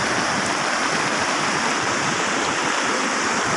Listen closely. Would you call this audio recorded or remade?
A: recorded